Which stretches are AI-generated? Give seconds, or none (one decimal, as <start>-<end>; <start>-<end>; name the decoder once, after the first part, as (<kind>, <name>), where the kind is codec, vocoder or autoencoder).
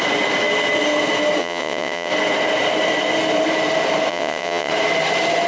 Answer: 1.4-2.1 (vocoder, WaveNeXt); 4.1-4.7